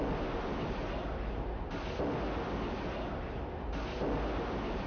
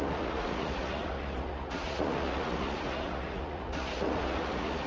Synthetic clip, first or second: second